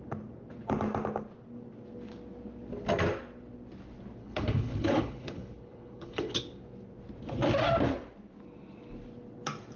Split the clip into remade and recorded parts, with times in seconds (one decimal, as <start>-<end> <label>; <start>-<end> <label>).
0.0-4.2 recorded; 4.2-6.6 remade; 6.6-9.8 recorded